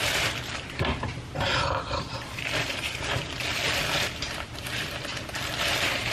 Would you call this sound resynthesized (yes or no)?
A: yes